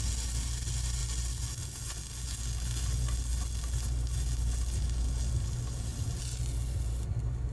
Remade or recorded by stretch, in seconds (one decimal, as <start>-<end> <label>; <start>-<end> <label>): 0.0-7.5 recorded